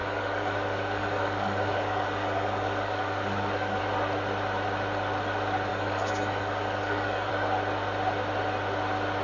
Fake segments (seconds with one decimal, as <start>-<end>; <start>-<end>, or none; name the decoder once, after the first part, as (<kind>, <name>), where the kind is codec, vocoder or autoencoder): 0.0-3.8 (codec, DAC); 5.7-7.3